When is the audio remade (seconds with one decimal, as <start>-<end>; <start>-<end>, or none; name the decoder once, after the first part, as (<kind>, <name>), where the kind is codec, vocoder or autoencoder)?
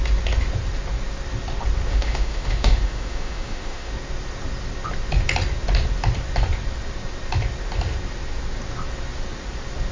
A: 1.9-3.9 (autoencoder, DAC-VAE)